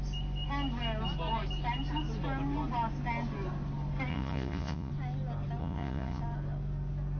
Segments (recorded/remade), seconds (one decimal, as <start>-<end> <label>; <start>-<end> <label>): 0.0-4.1 recorded; 4.1-4.9 remade; 4.9-5.6 recorded; 5.6-6.2 remade; 6.2-7.2 recorded